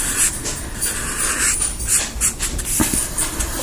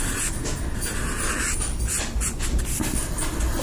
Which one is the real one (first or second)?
second